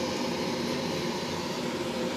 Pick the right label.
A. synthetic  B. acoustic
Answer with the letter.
B